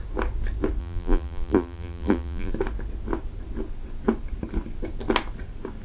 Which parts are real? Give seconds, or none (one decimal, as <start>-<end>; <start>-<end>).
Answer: 0.0-0.8; 2.5-5.8